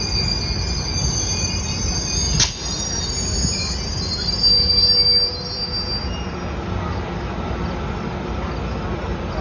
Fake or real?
real